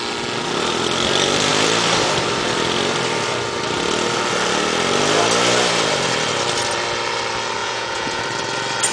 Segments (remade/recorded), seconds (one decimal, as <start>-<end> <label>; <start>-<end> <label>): 0.0-7.6 recorded; 7.6-8.2 remade; 8.2-8.9 recorded